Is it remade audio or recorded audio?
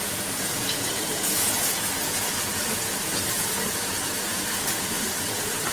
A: remade